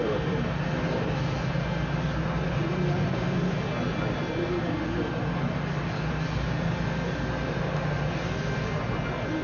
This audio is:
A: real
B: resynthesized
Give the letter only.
A